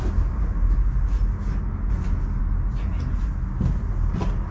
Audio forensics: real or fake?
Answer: real